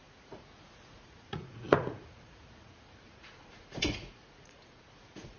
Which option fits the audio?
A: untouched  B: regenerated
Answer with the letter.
B